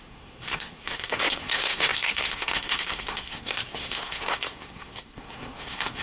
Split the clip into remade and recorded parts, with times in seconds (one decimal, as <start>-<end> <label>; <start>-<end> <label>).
0.0-6.0 remade